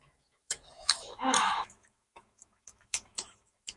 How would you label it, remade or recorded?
remade